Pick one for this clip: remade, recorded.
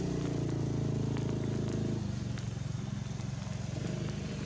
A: recorded